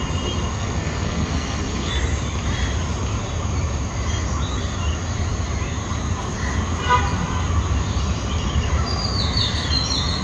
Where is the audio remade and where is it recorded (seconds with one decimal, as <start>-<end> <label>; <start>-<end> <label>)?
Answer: 0.0-0.5 recorded; 0.5-1.9 remade; 1.9-10.2 recorded